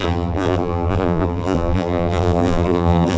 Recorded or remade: remade